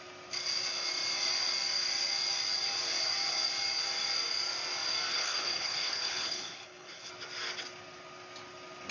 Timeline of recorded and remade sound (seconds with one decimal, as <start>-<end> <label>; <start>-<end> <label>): 0.0-5.1 recorded; 5.1-7.1 remade; 7.1-8.9 recorded